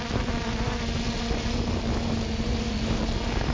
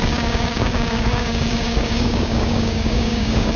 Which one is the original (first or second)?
first